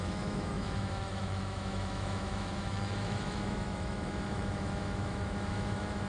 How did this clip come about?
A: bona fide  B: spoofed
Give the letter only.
B